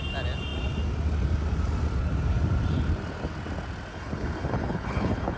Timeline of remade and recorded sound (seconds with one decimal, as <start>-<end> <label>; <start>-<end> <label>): 0.0-3.9 recorded; 3.9-5.4 remade

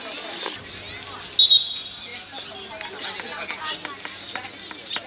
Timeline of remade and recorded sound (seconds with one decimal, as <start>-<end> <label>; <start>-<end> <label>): 0.0-5.1 recorded

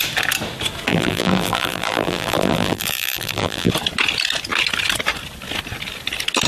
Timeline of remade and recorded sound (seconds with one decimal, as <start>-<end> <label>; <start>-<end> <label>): 0.0-0.9 recorded; 0.9-3.7 remade; 3.7-6.5 recorded

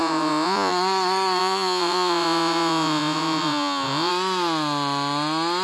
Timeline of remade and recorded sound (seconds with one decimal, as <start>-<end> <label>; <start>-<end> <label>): 0.0-0.7 remade; 0.7-1.4 recorded; 1.4-4.1 remade; 4.1-5.6 recorded

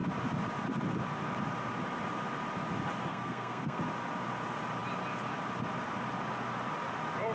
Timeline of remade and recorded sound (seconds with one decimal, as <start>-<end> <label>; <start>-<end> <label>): 0.0-3.1 recorded; 3.1-3.8 remade; 3.8-7.3 recorded

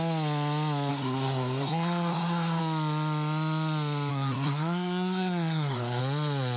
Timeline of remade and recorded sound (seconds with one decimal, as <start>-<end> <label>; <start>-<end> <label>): 0.0-0.9 recorded; 0.9-2.6 remade; 2.6-4.1 recorded; 4.1-6.0 remade; 6.0-6.6 recorded

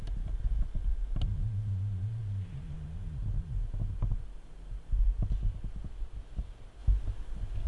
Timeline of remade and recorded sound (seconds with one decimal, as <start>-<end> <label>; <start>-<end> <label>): 0.0-7.7 recorded